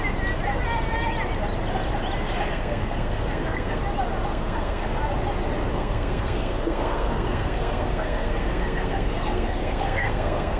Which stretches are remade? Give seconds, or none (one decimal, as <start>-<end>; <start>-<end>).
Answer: 2.5-3.8; 4.3-5.0; 5.7-10.6